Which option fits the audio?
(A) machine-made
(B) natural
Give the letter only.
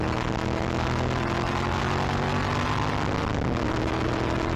B